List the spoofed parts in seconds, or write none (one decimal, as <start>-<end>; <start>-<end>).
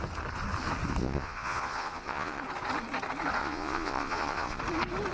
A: 1.0-2.4; 3.4-4.6